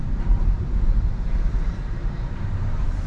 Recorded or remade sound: remade